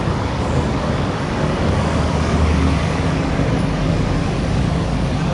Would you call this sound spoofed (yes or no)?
yes